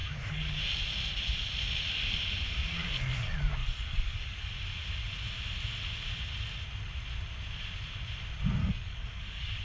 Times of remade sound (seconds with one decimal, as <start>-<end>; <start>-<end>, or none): 0.0-0.6; 3.6-4.5; 8.6-9.6